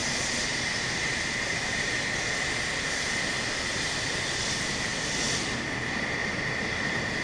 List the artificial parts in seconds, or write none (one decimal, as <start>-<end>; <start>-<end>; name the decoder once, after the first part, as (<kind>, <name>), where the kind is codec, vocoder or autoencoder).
0.0-1.9 (vocoder, BigVGAN v2); 6.2-7.2